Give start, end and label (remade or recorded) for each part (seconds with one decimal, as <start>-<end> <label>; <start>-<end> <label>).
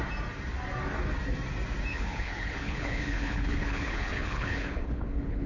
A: 0.0-1.9 recorded; 1.9-5.5 remade